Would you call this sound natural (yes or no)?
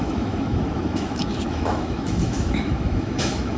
no